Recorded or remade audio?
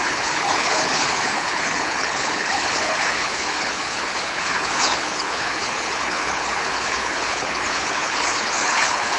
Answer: remade